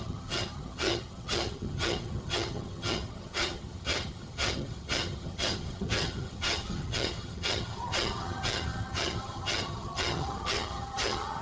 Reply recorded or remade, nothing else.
remade